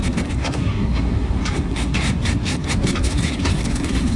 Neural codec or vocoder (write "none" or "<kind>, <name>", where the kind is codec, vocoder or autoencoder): codec, SNAC